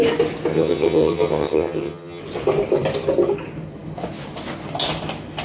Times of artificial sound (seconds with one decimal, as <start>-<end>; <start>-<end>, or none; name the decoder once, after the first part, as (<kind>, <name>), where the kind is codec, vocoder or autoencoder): 0.5-2.2 (vocoder, HiFi-GAN)